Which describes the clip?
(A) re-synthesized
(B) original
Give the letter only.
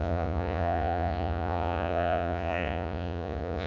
A